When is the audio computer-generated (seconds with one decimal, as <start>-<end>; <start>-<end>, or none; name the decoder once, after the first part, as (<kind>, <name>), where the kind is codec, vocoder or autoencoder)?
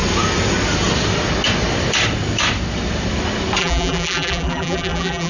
3.6-5.3 (vocoder, BigVGAN v2)